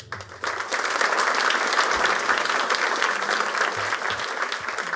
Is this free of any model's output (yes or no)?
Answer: yes